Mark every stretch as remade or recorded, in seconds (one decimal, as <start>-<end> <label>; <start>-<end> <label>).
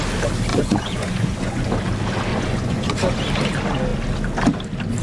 0.0-0.5 recorded; 0.5-1.7 remade; 1.7-2.3 recorded; 2.3-3.2 remade; 3.2-5.0 recorded